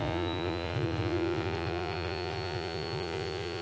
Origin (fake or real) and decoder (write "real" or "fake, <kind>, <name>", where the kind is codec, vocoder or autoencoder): fake, vocoder, Vocos